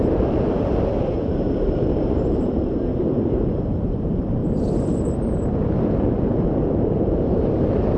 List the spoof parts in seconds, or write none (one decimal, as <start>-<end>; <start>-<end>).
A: 0.0-1.3; 2.0-4.4; 6.2-8.0